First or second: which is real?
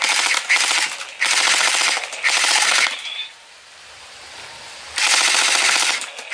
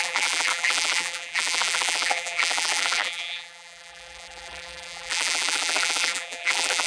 first